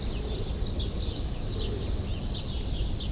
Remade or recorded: recorded